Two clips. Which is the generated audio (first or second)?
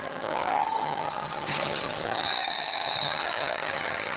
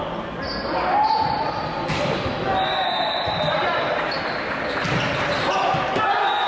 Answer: first